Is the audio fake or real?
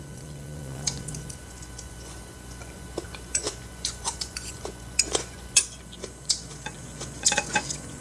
fake